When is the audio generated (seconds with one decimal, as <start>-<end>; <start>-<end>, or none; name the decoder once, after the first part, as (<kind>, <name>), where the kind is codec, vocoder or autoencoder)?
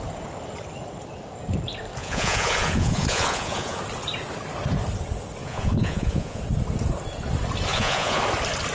2.0-3.8 (vocoder, Vocos); 5.4-6.4; 7.7-8.2